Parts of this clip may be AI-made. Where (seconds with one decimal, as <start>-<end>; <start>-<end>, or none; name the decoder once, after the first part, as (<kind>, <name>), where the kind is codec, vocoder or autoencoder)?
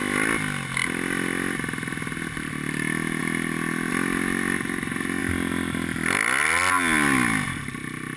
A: none